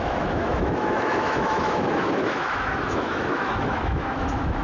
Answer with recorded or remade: remade